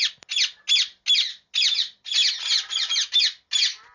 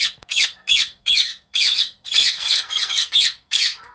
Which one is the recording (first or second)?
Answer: first